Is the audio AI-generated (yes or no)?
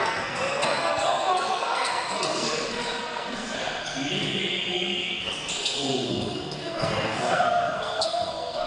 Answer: yes